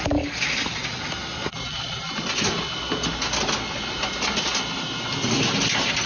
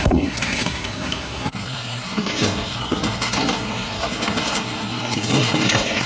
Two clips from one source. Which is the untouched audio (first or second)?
first